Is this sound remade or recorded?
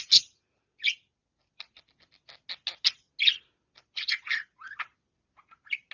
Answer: recorded